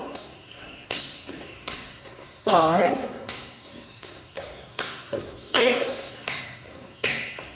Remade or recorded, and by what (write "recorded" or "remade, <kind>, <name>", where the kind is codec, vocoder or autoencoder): remade, codec, SNAC